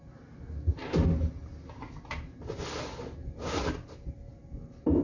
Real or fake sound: real